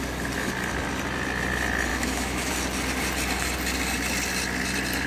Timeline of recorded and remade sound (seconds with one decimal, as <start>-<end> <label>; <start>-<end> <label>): 0.0-1.9 recorded; 1.9-2.5 remade; 2.5-5.1 recorded